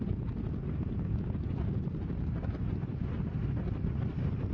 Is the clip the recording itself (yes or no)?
yes